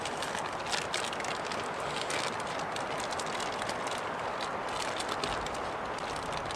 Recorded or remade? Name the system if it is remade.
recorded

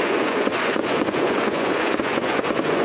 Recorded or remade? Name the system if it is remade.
remade, vocoder, Vocos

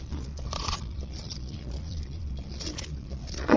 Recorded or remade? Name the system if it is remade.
remade, vocoder, Vocos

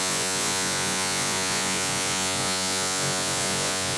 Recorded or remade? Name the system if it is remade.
remade, vocoder, Vocos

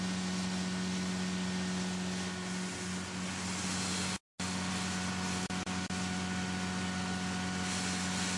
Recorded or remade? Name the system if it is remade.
recorded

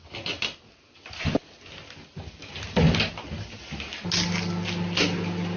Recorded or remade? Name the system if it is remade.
recorded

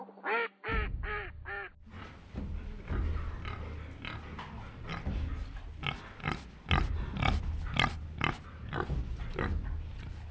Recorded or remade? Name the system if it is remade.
recorded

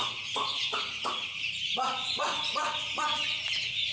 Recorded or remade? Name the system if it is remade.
remade, vocoder, Vocos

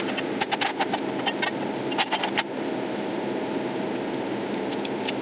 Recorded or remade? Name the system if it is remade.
recorded